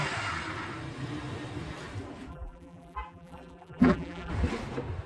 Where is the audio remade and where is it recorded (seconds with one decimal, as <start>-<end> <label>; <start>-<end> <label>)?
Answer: 0.0-2.3 recorded; 2.3-4.3 remade; 4.3-5.1 recorded